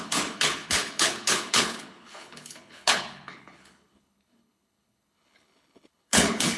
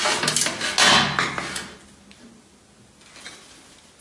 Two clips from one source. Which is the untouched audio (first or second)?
second